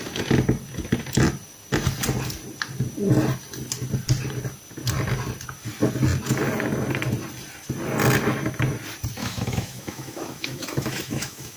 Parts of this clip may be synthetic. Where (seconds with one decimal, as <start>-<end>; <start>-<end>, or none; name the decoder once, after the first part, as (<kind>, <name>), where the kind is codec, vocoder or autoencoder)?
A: 9.2-11.6 (autoencoder, DAC-VAE)